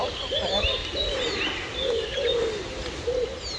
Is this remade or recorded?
recorded